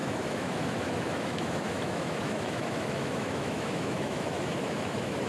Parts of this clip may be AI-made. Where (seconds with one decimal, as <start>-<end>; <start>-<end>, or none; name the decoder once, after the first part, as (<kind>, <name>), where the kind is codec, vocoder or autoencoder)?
0.0-5.3 (autoencoder, DAC-VAE)